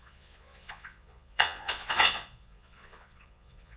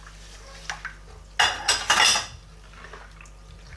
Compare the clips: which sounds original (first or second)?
second